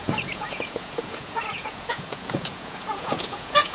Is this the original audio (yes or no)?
no